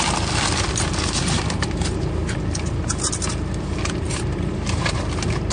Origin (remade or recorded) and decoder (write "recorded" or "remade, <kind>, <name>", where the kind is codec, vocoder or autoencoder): remade, vocoder, BigVGAN v2